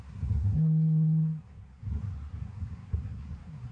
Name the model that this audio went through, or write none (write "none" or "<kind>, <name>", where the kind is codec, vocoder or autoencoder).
codec, SNAC